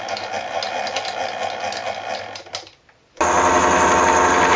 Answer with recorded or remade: recorded